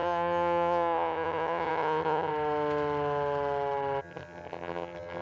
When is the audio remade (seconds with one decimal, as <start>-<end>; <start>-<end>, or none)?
0.0-2.3; 4.0-5.2